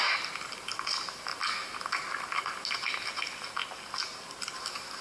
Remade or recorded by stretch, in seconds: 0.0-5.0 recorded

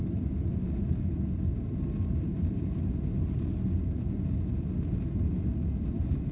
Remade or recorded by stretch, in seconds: 0.0-2.3 recorded; 2.3-2.9 remade; 2.9-6.3 recorded

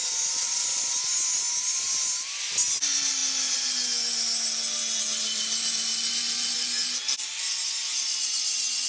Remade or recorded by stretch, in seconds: 0.0-8.9 recorded

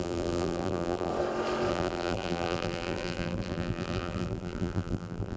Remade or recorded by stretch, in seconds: 0.0-1.1 remade; 1.1-1.7 recorded; 1.7-5.4 remade

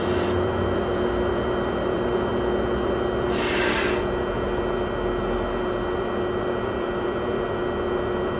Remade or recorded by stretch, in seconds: 0.0-2.3 remade; 2.3-6.4 recorded; 6.4-7.6 remade; 7.6-8.4 recorded